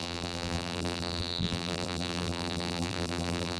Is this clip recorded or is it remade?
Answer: remade